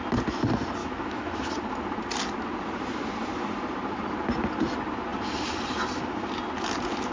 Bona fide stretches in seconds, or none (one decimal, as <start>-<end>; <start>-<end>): 0.0-0.8; 1.5-7.1